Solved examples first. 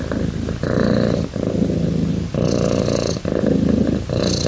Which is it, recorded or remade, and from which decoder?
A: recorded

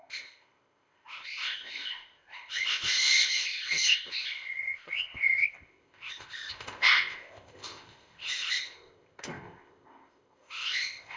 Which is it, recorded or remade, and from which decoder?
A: remade, codec, ZipCodec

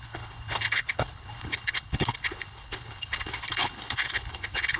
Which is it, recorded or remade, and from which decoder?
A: remade, codec, HILCodec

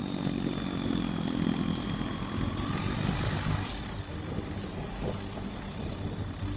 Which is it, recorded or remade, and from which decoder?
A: recorded